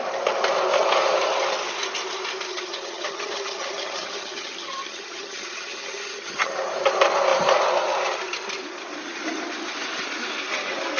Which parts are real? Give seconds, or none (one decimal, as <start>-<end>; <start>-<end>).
0.0-2.5; 6.5-11.0